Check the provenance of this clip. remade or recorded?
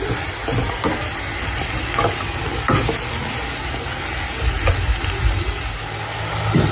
recorded